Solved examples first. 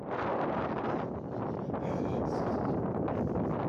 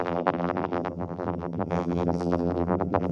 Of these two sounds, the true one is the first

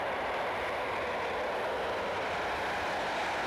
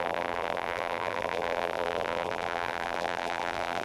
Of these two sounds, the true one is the first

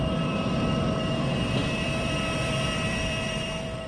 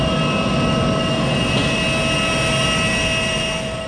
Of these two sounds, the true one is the second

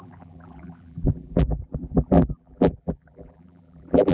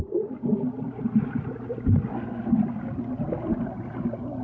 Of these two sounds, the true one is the second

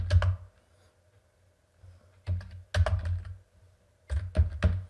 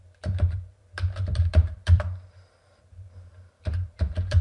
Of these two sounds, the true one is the first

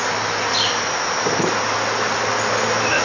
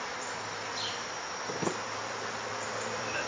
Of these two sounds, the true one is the first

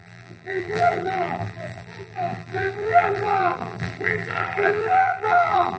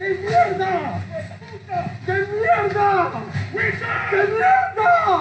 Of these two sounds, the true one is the second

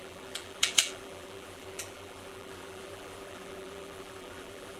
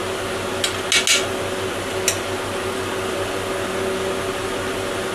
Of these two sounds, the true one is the second